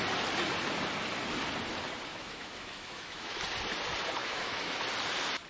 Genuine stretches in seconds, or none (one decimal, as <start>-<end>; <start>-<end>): 0.0-2.1; 3.4-4.2; 4.8-5.5